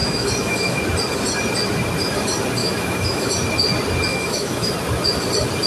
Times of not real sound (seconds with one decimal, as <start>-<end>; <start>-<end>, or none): 0.0-0.8; 2.6-3.3; 4.1-4.7